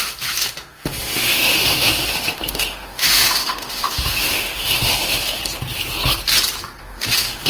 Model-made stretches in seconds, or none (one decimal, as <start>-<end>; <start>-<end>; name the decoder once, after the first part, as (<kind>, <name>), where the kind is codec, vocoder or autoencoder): 0.0-5.4 (autoencoder, DAC-VAE); 6.8-7.5

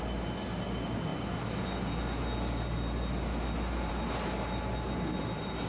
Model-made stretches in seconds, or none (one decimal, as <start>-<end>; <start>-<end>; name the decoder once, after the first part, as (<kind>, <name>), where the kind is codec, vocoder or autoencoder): none

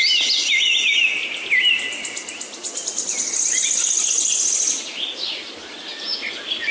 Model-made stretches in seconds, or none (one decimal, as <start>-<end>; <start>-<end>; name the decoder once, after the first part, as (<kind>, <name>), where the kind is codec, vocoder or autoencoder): none

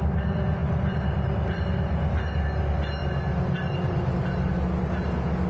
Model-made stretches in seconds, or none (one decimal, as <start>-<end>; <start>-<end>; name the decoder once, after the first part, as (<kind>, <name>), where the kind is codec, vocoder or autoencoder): none

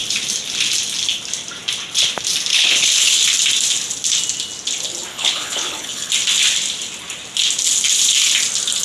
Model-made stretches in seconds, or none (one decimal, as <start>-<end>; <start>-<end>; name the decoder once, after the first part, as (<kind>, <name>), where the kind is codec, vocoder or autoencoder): 2.5-3.1 (codec, HILCodec); 5.1-6.1

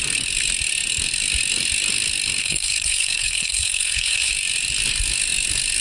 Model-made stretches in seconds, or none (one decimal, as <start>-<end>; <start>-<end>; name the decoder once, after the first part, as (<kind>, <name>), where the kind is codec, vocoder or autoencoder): 2.4-4.3 (codec, HILCodec)

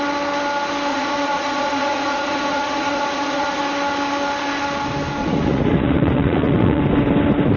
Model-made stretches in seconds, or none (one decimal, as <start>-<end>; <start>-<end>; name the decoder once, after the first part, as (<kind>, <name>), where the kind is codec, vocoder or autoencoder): 0.9-3.6 (vocoder, Vocos); 5.2-6.8

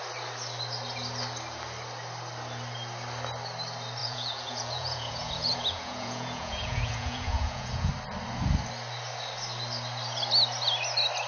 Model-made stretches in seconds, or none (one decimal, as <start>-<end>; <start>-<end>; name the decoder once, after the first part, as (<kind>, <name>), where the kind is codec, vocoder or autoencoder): 4.0-7.9 (vocoder, Vocos)